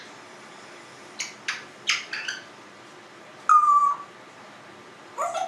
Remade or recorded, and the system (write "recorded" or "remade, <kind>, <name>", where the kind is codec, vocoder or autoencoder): recorded